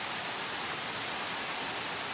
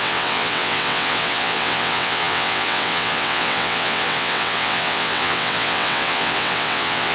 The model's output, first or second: second